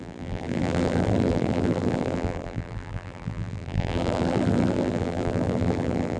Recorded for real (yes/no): no